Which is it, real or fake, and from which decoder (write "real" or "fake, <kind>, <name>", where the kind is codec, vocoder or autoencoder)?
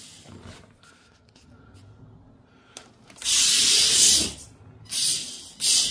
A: real